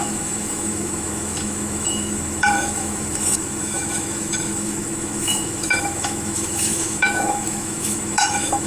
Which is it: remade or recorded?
remade